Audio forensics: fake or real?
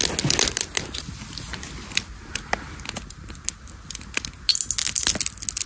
real